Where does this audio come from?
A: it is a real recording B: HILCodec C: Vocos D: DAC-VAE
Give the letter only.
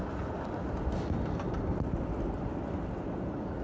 A